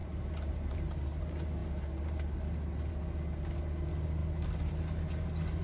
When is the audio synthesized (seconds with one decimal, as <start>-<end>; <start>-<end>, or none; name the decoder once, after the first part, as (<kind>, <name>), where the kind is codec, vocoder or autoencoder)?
0.0-1.2 (vocoder, BigVGAN v2)